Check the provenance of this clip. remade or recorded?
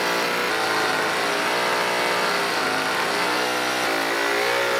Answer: recorded